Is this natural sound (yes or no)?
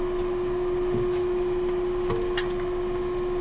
yes